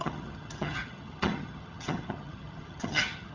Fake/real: fake